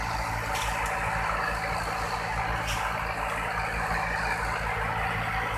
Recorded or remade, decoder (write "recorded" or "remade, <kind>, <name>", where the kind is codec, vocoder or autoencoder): recorded